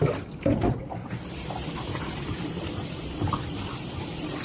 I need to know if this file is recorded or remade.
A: remade